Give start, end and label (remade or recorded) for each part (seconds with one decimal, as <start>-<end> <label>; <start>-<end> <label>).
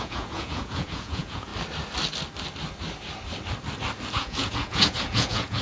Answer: 0.0-1.5 remade; 1.5-4.1 recorded; 4.1-5.6 remade